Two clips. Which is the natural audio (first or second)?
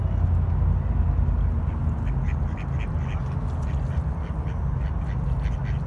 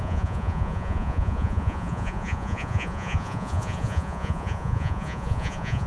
first